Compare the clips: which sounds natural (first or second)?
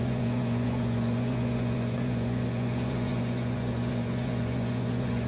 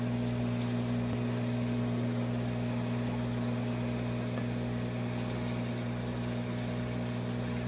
second